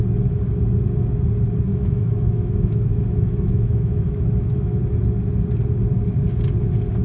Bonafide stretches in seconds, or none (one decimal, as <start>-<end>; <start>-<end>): 0.0-1.7; 4.8-7.0